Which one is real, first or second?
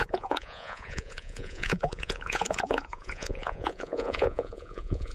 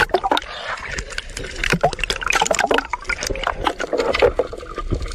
second